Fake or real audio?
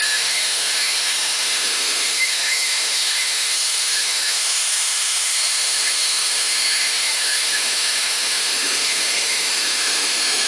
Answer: fake